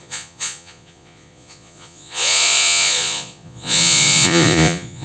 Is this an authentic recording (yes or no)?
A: no